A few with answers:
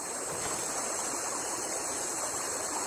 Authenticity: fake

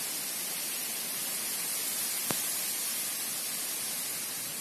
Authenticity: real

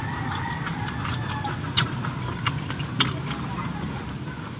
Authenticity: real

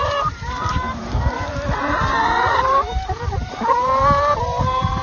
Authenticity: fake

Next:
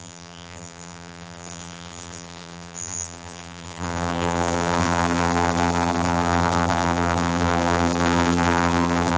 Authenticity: fake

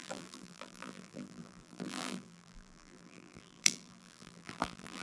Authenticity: fake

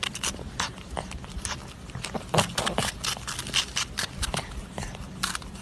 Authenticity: fake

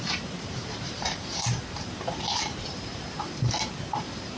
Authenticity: fake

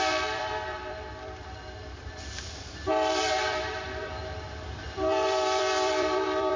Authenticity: fake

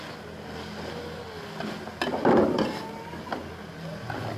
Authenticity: real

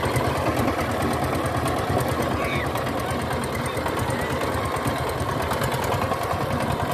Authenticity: real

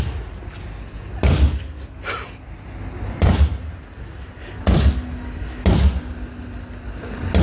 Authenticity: real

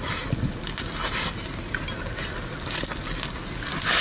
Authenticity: real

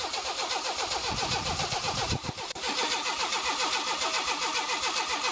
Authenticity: fake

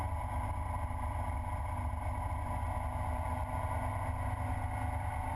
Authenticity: real